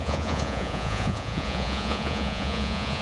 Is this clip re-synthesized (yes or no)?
yes